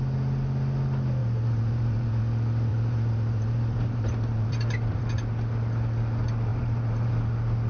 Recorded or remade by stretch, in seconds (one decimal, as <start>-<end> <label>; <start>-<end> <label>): 0.0-1.2 recorded; 1.2-2.2 remade; 2.2-2.7 recorded; 2.7-5.0 remade; 5.0-6.5 recorded; 6.5-7.1 remade; 7.1-7.7 recorded